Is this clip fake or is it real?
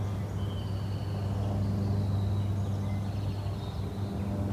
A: real